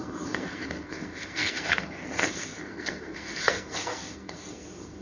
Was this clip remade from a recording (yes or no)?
yes